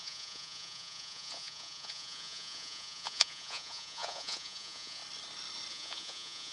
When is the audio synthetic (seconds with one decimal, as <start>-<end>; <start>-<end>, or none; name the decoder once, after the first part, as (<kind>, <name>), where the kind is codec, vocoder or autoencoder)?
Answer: 0.0-5.0 (vocoder, Vocos); 5.7-6.5